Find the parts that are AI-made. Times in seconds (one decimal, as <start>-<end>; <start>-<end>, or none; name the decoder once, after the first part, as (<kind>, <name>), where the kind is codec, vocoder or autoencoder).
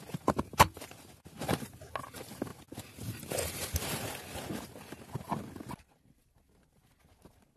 none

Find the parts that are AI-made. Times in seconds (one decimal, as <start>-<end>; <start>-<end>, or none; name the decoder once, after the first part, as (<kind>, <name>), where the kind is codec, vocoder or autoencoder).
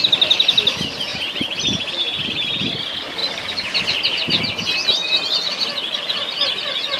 none